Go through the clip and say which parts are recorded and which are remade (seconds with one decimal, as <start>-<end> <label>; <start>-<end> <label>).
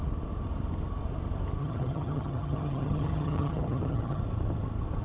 0.0-1.6 recorded; 1.6-4.2 remade; 4.2-5.0 recorded